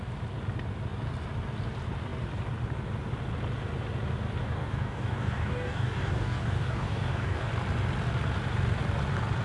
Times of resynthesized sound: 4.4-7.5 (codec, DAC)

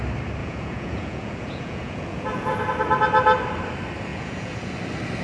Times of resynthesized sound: 0.4-2.6 (vocoder, Vocos); 4.1-4.7

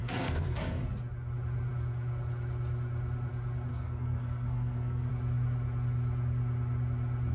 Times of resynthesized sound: 0.0-0.8 (codec, SNAC); 3.7-5.1

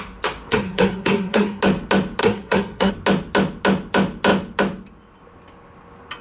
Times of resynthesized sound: 0.5-1.6 (codec, SNAC); 2.2-2.9

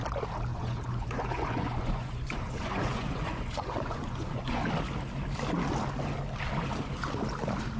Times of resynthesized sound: 0.5-4.7 (vocoder, Vocos)

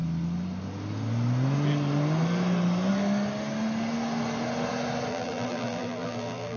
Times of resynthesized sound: 5.1-6.6 (vocoder, BigVGAN v2)

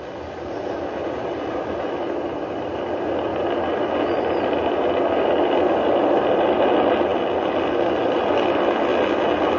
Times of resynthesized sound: none

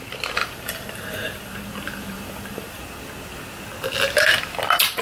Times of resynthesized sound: 0.4-2.8 (vocoder, BigVGAN v2)